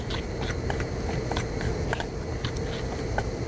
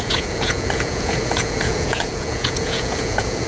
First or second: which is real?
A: first